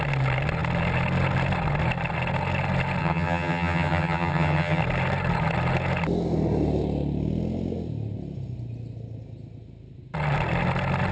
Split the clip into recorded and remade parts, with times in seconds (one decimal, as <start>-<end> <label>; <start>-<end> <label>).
0.0-3.0 recorded; 3.0-4.8 remade; 4.8-11.1 recorded